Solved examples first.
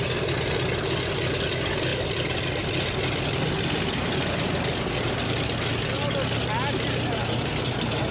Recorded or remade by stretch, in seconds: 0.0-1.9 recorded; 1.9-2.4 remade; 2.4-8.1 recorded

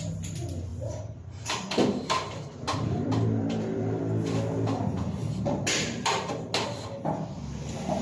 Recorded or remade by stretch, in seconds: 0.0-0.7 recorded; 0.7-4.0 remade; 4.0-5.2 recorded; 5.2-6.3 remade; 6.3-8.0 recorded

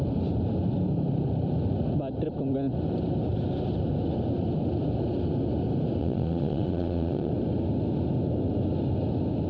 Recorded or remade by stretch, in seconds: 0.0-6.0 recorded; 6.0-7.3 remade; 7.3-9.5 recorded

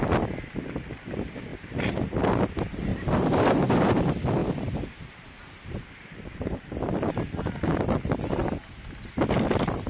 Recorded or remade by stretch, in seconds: 0.0-1.5 recorded; 1.5-2.4 remade; 2.4-2.9 recorded; 2.9-4.0 remade; 4.0-4.4 recorded; 4.4-7.2 remade; 7.2-9.9 recorded

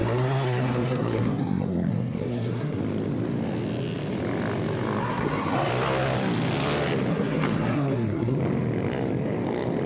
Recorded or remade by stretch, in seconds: 0.0-2.8 remade; 2.8-5.0 recorded; 5.0-5.7 remade; 5.7-7.1 recorded; 7.1-8.4 remade; 8.4-9.9 recorded

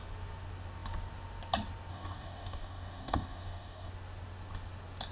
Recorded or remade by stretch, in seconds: 0.0-1.9 recorded; 1.9-3.9 remade; 3.9-5.1 recorded